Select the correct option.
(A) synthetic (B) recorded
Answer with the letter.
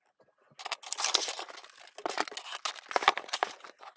B